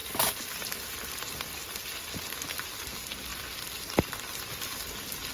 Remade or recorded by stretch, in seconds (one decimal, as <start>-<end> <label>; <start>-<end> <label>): 0.0-5.3 recorded